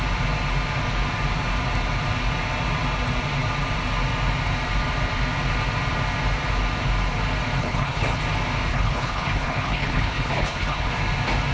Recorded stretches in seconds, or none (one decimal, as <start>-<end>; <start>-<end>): 0.0-7.6; 8.2-8.7; 10.9-11.5